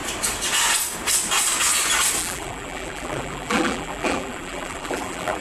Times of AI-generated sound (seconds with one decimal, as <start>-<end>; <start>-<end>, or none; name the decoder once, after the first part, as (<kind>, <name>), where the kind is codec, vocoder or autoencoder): 2.2-5.4 (vocoder, BigVGAN v2)